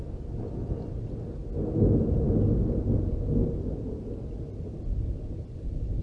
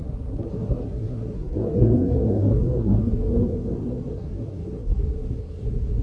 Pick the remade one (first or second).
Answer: second